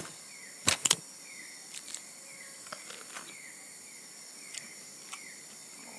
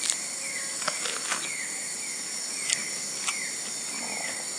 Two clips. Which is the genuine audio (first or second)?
second